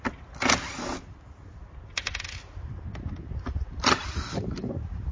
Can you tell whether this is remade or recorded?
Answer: recorded